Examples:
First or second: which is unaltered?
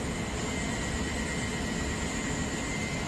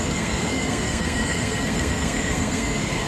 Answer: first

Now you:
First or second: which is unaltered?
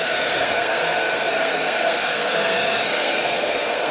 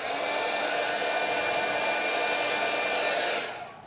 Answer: second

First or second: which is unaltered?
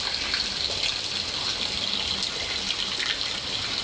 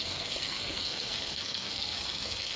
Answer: first